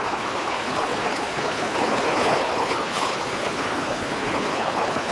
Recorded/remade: remade